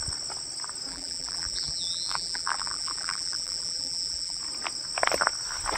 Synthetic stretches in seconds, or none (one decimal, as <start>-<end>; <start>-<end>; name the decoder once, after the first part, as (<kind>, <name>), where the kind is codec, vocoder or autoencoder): 0.9-4.4 (vocoder, BigVGAN v2)